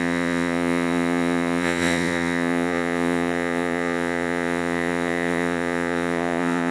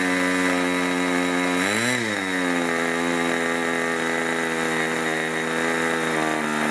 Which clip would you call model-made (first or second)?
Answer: first